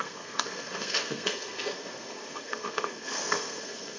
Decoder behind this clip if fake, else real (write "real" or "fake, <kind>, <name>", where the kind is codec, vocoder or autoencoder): fake, codec, SNAC